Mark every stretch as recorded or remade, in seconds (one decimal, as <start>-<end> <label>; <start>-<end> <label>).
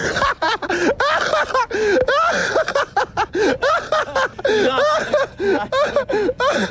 0.0-0.7 remade; 0.7-2.4 recorded; 2.4-3.7 remade; 3.7-6.7 recorded